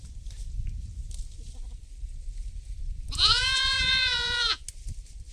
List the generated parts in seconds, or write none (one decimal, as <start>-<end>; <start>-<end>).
3.2-4.6